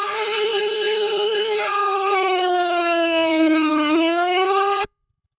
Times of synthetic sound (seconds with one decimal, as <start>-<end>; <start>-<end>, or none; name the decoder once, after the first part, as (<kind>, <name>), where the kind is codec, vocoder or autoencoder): 0.0-5.4 (codec, SNAC)